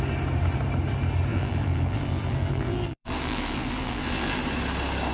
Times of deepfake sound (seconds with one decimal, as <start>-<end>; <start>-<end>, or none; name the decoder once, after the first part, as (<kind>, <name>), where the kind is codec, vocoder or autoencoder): 1.3-4.4 (vocoder, BigVGAN v2)